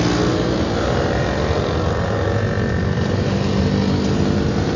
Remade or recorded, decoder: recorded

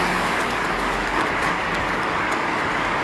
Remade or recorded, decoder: remade, codec, DAC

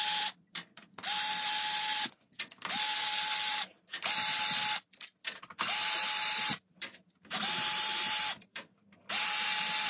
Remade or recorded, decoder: remade, vocoder, BigVGAN v2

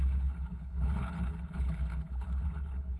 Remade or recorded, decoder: remade, codec, HILCodec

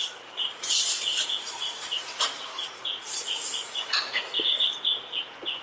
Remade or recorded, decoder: remade, vocoder, Vocos